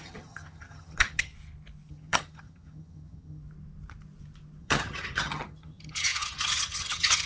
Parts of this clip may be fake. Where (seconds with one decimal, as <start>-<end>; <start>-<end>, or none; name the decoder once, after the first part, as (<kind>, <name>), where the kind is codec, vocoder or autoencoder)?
0.0-1.3 (vocoder, HiFi-GAN); 1.9-3.4; 4.6-7.3